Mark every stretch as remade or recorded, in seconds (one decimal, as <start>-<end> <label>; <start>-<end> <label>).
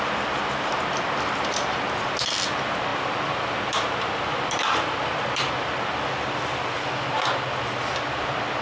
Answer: 0.0-2.9 recorded; 2.9-5.5 remade; 5.5-8.6 recorded